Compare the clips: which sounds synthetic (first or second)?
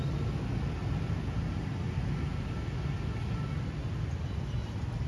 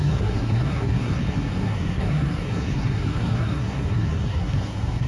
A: second